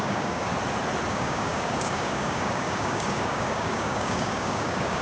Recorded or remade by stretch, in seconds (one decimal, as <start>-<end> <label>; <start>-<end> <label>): 0.0-0.5 remade; 0.5-1.1 recorded; 1.1-5.0 remade

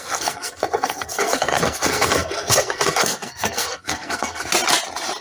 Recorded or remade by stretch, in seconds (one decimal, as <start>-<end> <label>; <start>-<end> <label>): 0.0-4.5 remade; 4.5-5.2 recorded

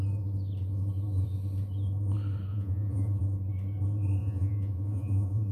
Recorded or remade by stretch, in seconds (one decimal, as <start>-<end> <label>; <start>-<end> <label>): 0.0-2.5 recorded; 2.5-3.2 remade; 3.2-4.2 recorded; 4.2-5.5 remade

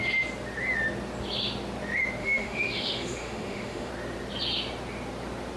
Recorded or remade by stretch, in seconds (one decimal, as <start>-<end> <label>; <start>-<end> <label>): 0.0-2.2 recorded; 2.2-3.9 remade; 3.9-5.6 recorded

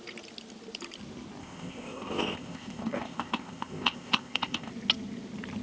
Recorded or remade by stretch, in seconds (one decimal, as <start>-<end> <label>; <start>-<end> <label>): 0.0-1.4 recorded; 1.4-4.7 remade; 4.7-5.6 recorded

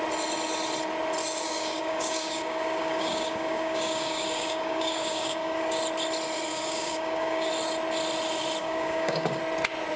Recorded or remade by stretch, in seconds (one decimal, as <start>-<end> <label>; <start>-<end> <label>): 0.0-1.4 recorded; 1.4-5.8 remade; 5.8-6.5 recorded; 6.5-7.5 remade; 7.5-8.6 recorded; 8.6-9.4 remade; 9.4-10.0 recorded

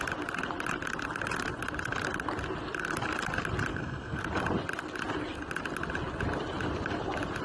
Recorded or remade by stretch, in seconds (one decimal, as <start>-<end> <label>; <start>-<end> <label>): 0.0-3.7 recorded; 3.7-4.2 remade; 4.2-7.4 recorded

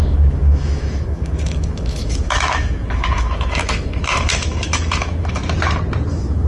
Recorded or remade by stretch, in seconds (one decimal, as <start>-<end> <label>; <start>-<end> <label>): 0.0-5.4 remade; 5.4-6.1 recorded; 6.1-6.5 remade